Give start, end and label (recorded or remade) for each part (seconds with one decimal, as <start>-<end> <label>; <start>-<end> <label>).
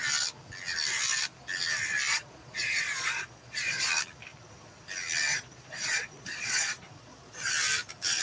0.0-2.1 recorded; 2.1-3.9 remade; 3.9-5.3 recorded; 5.3-7.5 remade; 7.5-8.2 recorded